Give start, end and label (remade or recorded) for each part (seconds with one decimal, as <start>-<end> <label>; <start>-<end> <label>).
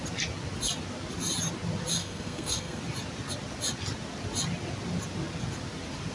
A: 0.0-2.0 recorded; 2.0-2.8 remade; 2.8-6.1 recorded